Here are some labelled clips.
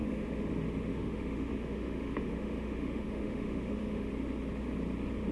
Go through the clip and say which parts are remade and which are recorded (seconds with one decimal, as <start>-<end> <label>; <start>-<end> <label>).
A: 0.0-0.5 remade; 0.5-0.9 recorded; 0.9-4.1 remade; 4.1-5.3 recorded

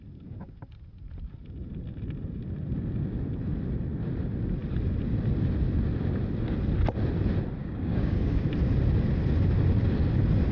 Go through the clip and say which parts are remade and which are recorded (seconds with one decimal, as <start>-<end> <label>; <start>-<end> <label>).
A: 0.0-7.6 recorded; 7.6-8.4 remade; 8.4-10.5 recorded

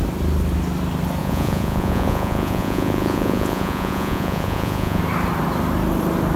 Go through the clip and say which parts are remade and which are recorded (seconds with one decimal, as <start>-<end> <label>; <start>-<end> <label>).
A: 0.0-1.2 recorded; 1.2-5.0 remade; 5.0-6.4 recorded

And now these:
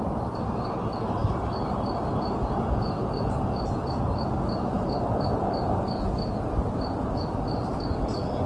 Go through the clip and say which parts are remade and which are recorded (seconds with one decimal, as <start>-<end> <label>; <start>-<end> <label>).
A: 0.0-8.5 recorded

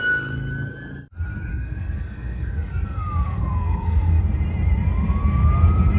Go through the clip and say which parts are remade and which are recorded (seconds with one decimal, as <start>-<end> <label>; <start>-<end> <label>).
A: 0.0-1.5 recorded; 1.5-4.2 remade; 4.2-6.0 recorded